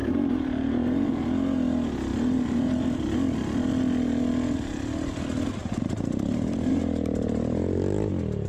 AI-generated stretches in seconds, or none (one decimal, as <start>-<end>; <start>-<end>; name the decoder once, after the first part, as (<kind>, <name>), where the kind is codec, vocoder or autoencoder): 0.0-1.2 (vocoder, BigVGAN v2); 2.1-3.0; 5.6-6.7